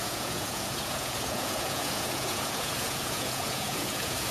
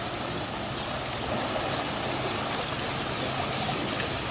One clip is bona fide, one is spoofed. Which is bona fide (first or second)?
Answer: second